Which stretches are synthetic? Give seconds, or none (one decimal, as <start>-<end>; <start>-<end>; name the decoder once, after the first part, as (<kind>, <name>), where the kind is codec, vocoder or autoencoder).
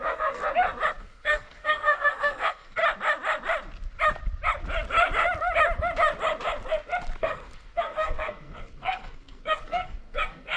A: 0.0-0.4 (codec, SNAC); 1.0-2.8; 7.2-10.6